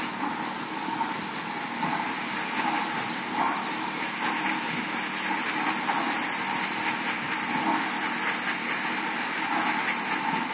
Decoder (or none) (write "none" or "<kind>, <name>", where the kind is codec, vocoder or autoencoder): none